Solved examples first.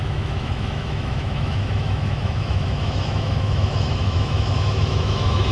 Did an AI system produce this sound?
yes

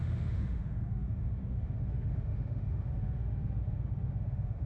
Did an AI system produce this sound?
yes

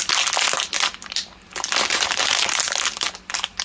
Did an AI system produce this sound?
no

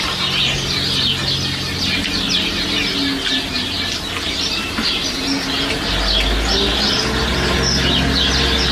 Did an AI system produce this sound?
no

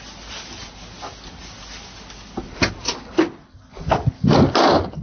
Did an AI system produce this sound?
no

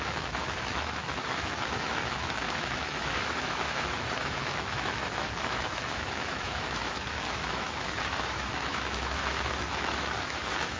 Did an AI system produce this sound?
yes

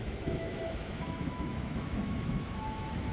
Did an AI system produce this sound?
yes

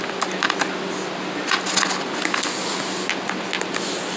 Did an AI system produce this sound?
no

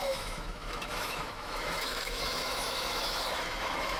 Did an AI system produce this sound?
yes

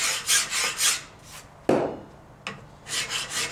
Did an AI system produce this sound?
no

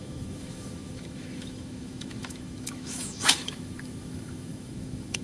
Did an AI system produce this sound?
yes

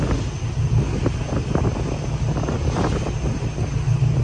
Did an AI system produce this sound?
no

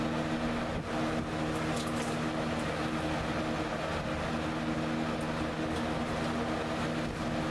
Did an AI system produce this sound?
no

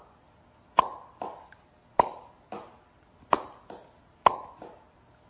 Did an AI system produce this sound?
no